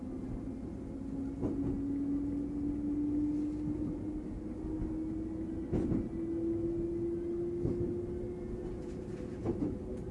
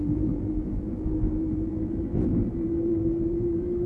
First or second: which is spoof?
second